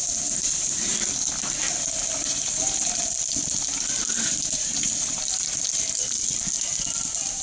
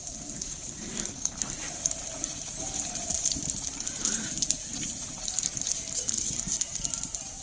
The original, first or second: first